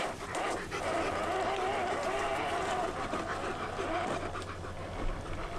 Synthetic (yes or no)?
no